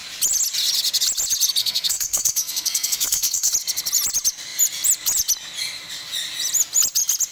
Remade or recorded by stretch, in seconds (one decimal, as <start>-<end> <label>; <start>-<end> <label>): 0.0-1.6 recorded; 1.6-3.5 remade; 3.5-7.3 recorded